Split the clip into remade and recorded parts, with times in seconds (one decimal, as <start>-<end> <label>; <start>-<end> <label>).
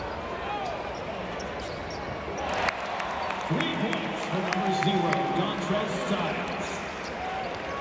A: 0.0-7.8 recorded